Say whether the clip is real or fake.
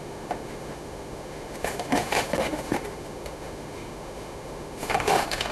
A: fake